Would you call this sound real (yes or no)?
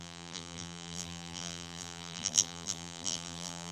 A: no